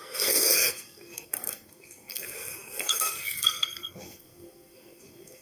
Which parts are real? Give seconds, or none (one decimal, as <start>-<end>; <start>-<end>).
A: none